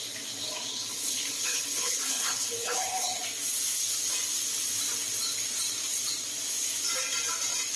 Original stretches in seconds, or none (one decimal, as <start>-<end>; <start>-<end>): 0.0-0.7; 3.2-7.8